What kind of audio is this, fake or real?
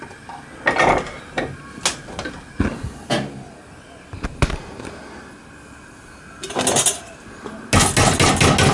real